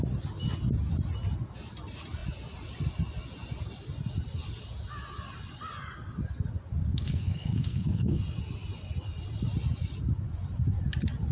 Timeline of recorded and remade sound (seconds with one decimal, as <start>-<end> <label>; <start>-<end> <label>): 0.0-6.9 recorded; 6.9-8.2 remade; 8.2-11.3 recorded